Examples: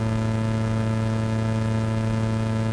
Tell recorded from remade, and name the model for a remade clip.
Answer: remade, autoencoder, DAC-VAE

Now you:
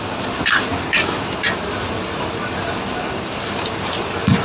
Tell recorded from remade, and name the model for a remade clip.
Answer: recorded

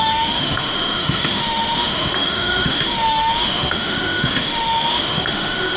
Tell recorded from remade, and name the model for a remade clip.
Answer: remade, autoencoder, DAC-VAE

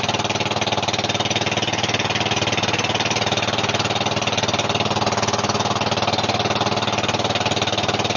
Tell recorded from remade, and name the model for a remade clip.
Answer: recorded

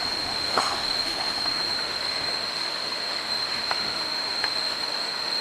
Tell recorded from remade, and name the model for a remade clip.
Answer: remade, autoencoder, DAC-VAE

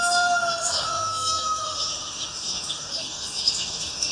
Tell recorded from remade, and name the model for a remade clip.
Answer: remade, autoencoder, DAC-VAE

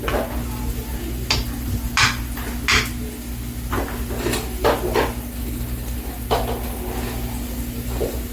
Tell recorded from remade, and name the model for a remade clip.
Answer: recorded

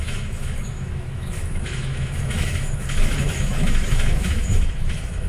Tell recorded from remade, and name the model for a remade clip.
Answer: remade, autoencoder, DAC-VAE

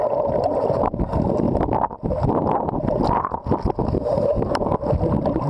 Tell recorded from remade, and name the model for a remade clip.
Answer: recorded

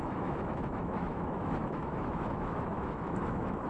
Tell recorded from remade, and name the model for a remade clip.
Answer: remade, autoencoder, DAC-VAE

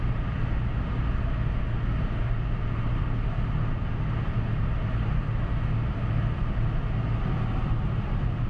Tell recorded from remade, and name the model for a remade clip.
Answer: recorded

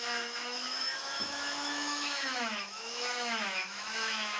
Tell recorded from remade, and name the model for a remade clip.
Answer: remade, autoencoder, DAC-VAE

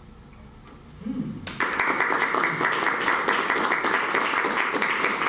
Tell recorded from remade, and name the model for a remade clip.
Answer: recorded